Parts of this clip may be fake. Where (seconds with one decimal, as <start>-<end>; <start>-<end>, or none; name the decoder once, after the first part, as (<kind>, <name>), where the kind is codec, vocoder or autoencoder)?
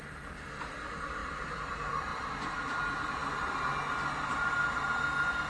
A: 1.2-1.7 (vocoder, BigVGAN v2); 2.1-2.8